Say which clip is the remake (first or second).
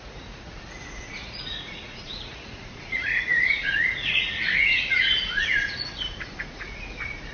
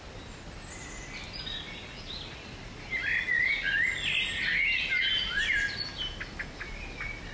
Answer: first